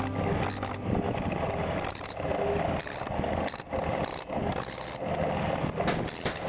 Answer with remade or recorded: recorded